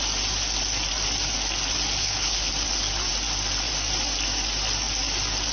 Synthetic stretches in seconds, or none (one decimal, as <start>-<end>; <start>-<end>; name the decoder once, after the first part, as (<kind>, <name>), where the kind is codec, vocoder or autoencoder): 2.0-2.5 (codec, HILCodec)